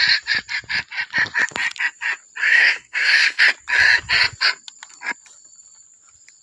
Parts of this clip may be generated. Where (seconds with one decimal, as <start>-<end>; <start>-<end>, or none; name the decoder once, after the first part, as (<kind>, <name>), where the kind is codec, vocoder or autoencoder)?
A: 2.4-3.4 (codec, SNAC)